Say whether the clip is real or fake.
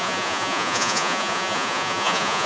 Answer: fake